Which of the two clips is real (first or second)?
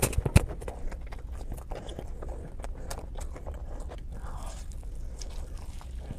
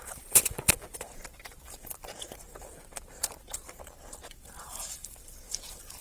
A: first